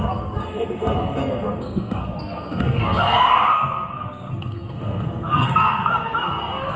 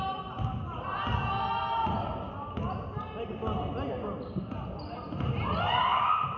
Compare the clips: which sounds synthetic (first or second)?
first